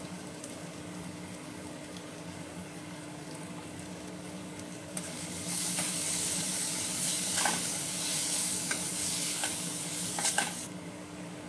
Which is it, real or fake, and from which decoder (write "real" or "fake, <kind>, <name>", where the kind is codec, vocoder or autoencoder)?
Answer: fake, codec, DAC